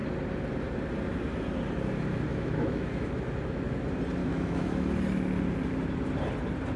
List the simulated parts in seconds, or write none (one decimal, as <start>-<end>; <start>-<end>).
2.3-3.1; 4.2-4.9